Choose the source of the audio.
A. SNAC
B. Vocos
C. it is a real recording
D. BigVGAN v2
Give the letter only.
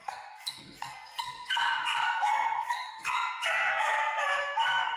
A